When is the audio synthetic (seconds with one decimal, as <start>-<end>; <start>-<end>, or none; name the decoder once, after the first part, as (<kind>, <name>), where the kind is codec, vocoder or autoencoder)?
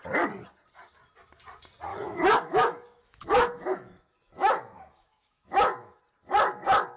1.9-6.0 (autoencoder, DAC-VAE)